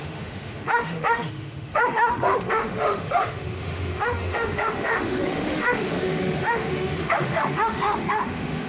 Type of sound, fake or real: fake